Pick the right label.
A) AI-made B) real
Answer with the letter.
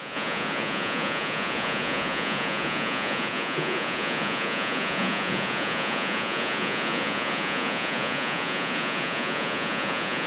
A